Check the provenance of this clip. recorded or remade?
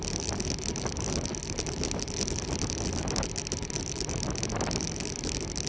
recorded